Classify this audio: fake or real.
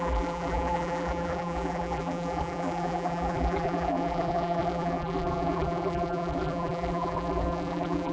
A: fake